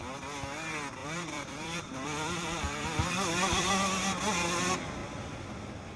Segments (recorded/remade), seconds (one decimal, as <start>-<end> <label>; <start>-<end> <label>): 0.0-1.0 recorded; 1.0-3.7 remade; 3.7-6.0 recorded